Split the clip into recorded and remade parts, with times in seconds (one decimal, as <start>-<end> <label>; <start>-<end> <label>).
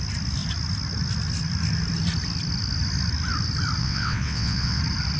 0.0-3.8 recorded; 3.8-4.8 remade; 4.8-5.2 recorded